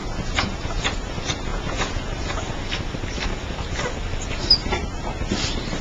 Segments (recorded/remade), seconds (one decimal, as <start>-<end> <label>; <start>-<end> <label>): 0.0-1.1 remade; 1.1-1.5 recorded; 1.5-2.6 remade; 2.6-5.8 recorded